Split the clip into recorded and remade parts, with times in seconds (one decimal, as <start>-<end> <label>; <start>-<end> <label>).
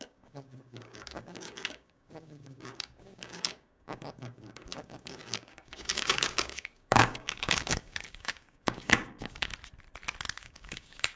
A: 0.0-9.5 remade; 9.5-10.4 recorded; 10.4-11.2 remade